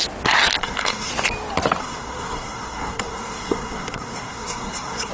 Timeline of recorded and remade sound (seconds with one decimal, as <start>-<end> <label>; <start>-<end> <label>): 0.0-0.6 recorded; 0.6-1.1 remade; 1.1-1.8 recorded; 1.8-5.1 remade